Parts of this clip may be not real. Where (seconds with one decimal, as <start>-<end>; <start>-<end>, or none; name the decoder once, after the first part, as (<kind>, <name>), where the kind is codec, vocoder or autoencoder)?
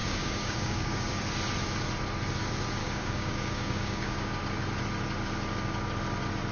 0.0-1.2 (codec, DAC); 2.8-4.4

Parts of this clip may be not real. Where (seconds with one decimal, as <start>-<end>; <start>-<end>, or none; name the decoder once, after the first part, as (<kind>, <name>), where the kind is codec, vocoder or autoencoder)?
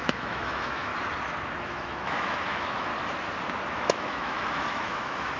0.0-0.9 (autoencoder, DAC-VAE); 1.6-2.9; 3.7-5.4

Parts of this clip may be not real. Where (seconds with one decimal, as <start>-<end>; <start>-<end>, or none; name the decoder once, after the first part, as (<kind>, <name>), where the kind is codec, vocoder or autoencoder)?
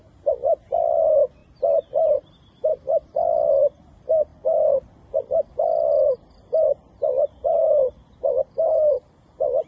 1.4-2.3 (vocoder, BigVGAN v2); 6.7-7.9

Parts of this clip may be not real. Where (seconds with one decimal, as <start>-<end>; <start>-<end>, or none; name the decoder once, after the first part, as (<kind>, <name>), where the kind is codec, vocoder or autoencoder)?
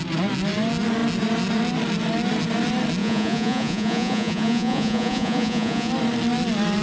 3.0-5.9 (vocoder, Vocos)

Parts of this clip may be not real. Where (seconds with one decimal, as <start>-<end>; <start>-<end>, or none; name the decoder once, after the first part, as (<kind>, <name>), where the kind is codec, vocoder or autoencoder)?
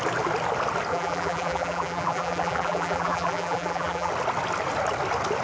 0.9-4.1 (vocoder, BigVGAN v2)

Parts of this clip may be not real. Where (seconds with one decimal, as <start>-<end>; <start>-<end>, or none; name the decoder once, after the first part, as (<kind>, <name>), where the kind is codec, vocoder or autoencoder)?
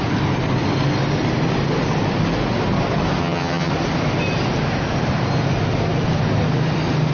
3.2-3.7 (vocoder, HiFi-GAN)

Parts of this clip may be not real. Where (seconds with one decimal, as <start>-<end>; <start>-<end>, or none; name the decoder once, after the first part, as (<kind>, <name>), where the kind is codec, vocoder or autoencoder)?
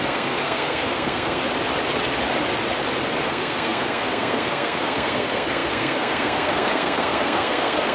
0.0-1.4 (codec, SNAC); 3.3-7.9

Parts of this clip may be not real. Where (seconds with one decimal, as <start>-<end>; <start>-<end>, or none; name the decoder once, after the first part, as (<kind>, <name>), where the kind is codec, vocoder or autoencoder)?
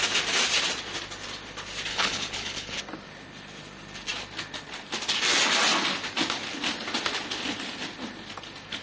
1.9-2.8 (codec, HILCodec)